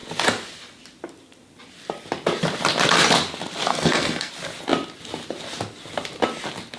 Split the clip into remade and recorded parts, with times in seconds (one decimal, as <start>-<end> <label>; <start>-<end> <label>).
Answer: 0.0-3.7 recorded; 3.7-4.3 remade; 4.3-6.8 recorded